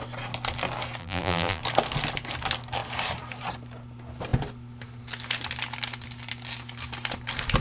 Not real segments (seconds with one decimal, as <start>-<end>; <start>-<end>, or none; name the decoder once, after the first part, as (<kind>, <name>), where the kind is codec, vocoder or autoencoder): 1.0-1.6 (vocoder, BigVGAN v2)